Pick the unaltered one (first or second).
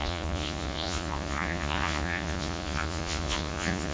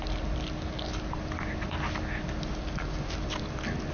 second